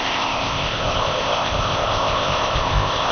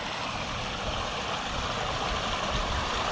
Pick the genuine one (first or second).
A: second